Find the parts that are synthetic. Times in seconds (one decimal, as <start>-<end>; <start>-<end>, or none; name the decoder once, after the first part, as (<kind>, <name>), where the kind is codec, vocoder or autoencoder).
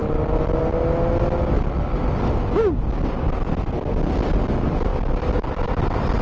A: none